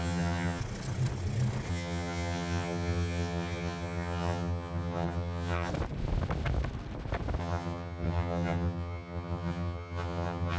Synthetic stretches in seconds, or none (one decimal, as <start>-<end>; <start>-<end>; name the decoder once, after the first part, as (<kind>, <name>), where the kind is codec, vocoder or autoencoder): 0.0-0.6 (vocoder, HiFi-GAN); 1.7-5.7; 7.4-10.6